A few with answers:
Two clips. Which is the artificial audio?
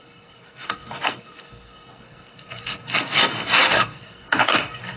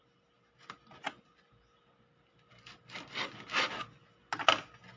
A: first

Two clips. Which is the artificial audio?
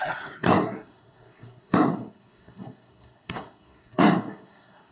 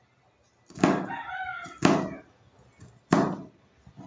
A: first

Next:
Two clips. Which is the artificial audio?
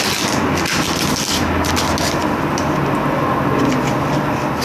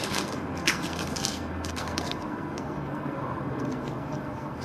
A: second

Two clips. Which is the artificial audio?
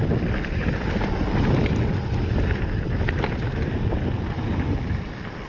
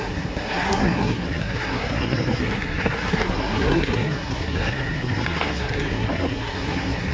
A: second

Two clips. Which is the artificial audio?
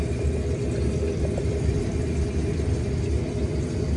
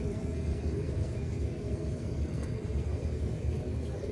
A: second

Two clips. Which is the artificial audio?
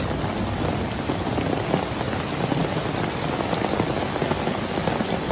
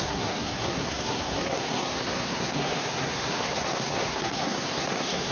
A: second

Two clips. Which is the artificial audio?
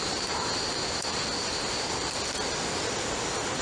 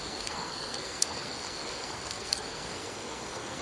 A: second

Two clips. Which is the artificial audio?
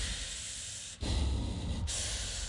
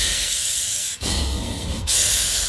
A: second